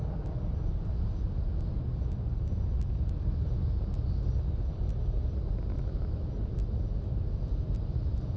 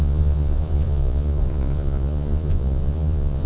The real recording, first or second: first